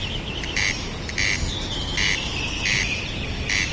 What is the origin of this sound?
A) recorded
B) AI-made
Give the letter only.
A